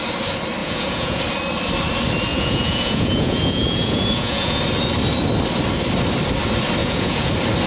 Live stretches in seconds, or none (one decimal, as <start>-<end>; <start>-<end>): 0.0-0.6; 1.2-2.3; 4.6-6.8; 7.3-7.7